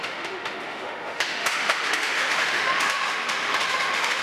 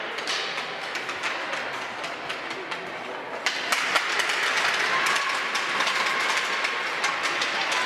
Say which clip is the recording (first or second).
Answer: second